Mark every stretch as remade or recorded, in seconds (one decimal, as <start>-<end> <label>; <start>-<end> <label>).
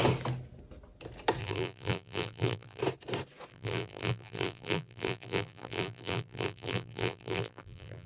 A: 0.0-1.4 recorded; 1.4-2.8 remade; 2.8-3.5 recorded; 3.5-8.1 remade